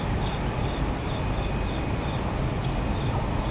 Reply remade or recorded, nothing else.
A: recorded